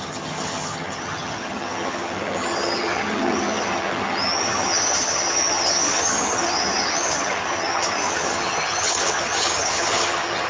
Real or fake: fake